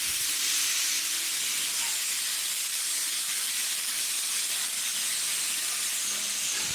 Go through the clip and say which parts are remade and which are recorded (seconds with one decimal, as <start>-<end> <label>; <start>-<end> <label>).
0.0-2.3 recorded; 2.3-5.0 remade; 5.0-6.7 recorded